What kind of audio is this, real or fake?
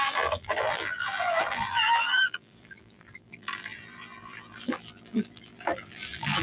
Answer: fake